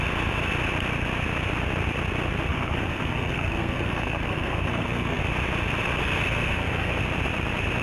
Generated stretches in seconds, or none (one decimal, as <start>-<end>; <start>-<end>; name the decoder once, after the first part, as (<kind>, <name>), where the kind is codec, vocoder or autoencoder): 2.5-5.2 (codec, SNAC); 6.0-7.0